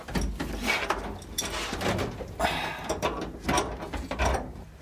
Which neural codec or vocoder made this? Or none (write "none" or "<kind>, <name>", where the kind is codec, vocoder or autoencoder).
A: none